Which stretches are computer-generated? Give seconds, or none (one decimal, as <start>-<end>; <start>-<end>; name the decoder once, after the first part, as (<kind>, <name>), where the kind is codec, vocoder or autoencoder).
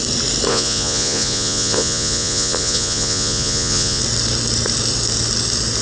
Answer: 0.5-4.0 (vocoder, Vocos)